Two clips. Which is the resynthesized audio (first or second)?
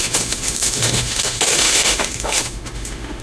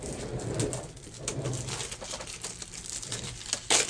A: first